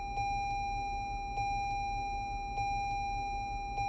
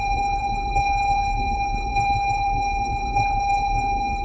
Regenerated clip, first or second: second